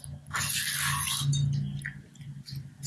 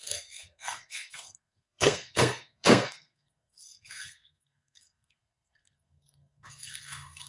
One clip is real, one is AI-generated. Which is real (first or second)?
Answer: first